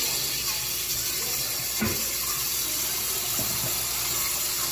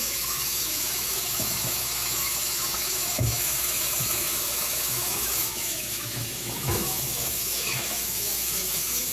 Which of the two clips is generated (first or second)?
second